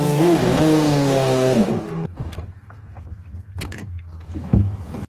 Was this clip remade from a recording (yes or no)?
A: yes